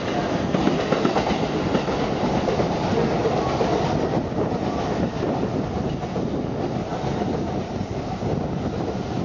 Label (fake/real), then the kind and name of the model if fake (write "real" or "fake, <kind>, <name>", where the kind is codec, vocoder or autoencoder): real